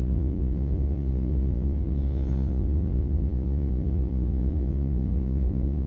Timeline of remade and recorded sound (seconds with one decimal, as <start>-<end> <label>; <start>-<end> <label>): 0.0-5.9 remade